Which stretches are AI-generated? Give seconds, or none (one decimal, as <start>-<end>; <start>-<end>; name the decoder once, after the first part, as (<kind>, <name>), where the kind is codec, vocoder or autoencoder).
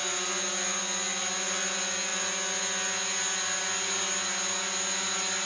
none